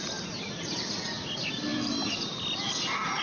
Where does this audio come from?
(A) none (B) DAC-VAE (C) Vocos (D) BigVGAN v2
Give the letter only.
A